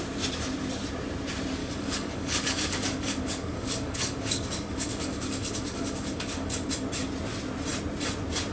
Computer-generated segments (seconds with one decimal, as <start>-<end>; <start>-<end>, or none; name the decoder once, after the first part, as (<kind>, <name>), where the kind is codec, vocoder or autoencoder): 1.6-6.7 (codec, DAC)